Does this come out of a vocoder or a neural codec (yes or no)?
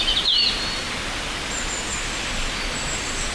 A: no